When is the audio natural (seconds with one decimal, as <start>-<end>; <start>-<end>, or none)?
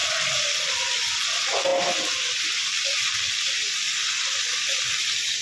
0.0-5.4